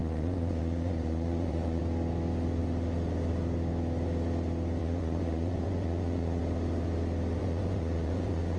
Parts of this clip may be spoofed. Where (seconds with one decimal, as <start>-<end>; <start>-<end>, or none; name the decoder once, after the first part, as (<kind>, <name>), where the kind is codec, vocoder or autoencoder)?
0.0-1.8 (vocoder, Vocos); 4.8-6.4; 7.4-8.6